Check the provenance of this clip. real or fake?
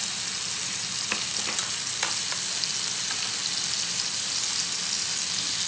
real